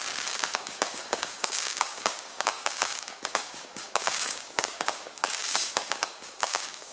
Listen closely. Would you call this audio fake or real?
fake